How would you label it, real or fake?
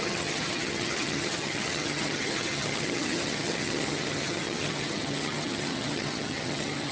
fake